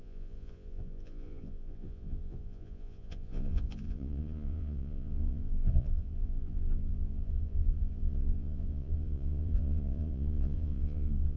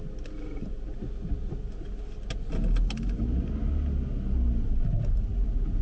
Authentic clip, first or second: second